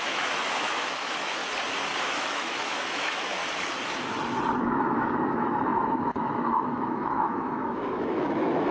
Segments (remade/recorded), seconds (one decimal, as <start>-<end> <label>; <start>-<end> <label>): 0.0-1.4 remade; 1.4-2.0 recorded; 2.0-3.4 remade; 3.4-4.5 recorded; 4.5-8.7 remade